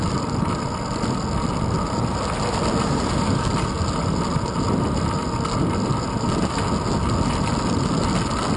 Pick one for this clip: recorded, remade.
recorded